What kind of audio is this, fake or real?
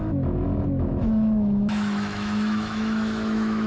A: fake